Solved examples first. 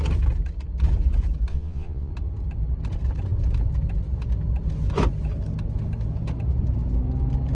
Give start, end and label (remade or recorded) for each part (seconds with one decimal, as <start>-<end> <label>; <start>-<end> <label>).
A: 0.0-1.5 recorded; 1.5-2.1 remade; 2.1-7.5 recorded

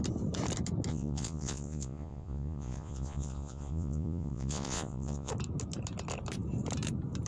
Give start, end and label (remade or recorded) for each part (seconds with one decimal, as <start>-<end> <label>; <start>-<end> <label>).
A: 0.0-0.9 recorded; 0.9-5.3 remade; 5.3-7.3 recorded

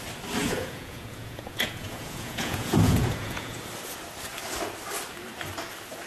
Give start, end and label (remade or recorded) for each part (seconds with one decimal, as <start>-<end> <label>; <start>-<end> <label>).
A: 0.0-0.4 recorded; 0.4-3.6 remade; 3.6-6.1 recorded